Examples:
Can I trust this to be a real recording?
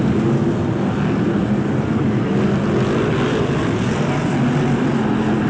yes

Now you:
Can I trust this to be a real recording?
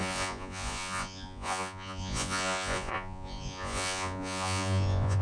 no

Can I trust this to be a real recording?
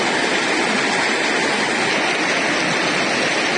yes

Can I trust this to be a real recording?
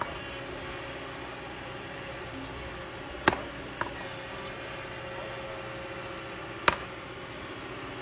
yes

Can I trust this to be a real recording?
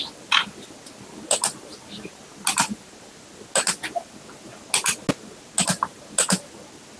yes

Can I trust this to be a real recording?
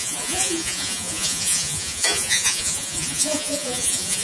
no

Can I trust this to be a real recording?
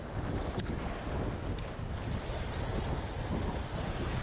yes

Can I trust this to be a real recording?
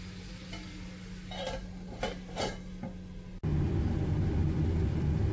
yes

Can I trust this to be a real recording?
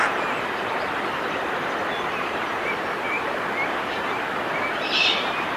yes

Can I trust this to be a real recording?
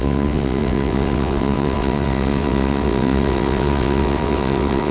no